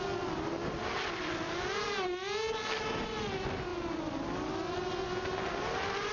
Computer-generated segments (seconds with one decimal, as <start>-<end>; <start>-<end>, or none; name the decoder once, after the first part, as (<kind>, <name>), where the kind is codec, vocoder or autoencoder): none